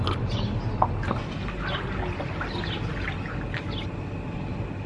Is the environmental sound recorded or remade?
recorded